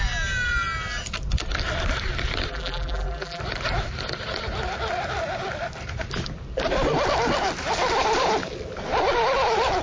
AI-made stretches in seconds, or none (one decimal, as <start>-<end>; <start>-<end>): 2.5-3.4